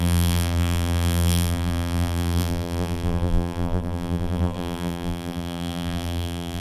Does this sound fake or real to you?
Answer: fake